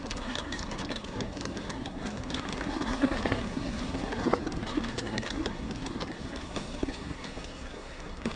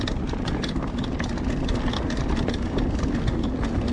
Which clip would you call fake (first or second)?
first